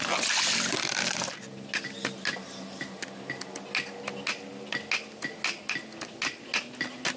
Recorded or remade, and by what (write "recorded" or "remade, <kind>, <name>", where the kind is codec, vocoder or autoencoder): recorded